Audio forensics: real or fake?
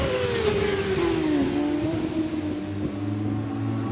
real